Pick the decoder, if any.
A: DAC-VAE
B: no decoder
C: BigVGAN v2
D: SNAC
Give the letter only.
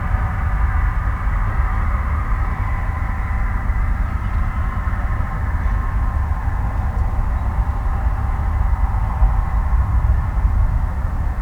B